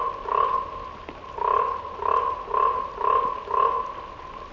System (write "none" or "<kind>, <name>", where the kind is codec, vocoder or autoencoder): none